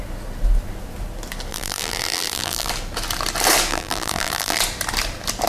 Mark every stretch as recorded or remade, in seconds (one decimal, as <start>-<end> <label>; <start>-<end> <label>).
0.0-1.5 recorded; 1.5-2.7 remade; 2.7-3.7 recorded; 3.7-4.6 remade; 4.6-5.5 recorded

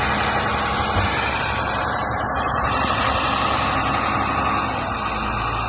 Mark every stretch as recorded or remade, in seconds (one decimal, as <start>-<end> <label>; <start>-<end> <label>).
0.0-0.5 recorded; 0.5-3.0 remade; 3.0-5.7 recorded

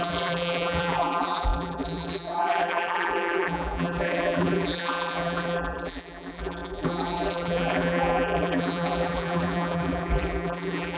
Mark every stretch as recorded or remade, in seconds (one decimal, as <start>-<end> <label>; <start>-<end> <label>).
0.0-11.0 remade

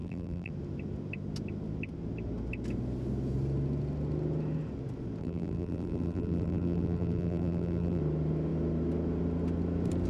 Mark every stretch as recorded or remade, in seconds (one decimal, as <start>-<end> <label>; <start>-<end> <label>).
0.0-0.5 remade; 0.5-5.2 recorded; 5.2-8.0 remade; 8.0-10.1 recorded

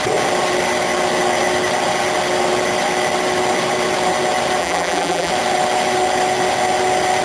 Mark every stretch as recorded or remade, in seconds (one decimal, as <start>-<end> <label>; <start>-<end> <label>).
0.0-4.6 recorded; 4.6-5.3 remade; 5.3-7.2 recorded

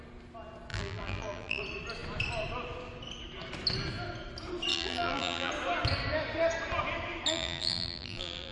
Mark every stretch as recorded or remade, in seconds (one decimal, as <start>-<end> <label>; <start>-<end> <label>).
0.0-0.7 recorded; 0.7-1.6 remade; 1.6-4.7 recorded; 4.7-5.5 remade; 5.5-7.3 recorded; 7.3-8.5 remade

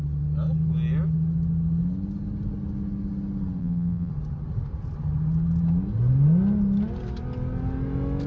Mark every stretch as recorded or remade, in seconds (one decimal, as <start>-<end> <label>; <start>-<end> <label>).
0.0-3.6 recorded; 3.6-4.1 remade; 4.1-8.3 recorded

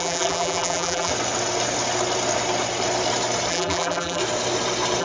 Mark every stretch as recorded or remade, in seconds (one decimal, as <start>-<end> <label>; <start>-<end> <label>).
0.0-1.1 remade; 1.1-3.5 recorded; 3.5-4.2 remade; 4.2-5.0 recorded